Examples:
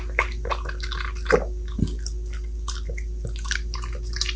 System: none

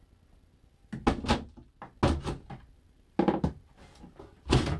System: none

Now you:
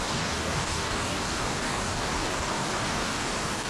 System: codec, DAC